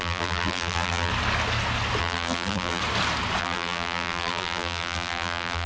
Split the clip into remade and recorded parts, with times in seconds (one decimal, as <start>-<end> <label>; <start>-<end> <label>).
0.0-1.1 remade; 1.1-2.0 recorded; 2.0-2.8 remade; 2.8-3.4 recorded; 3.4-5.7 remade